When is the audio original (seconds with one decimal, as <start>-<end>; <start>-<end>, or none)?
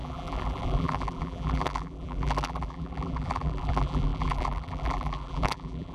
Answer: none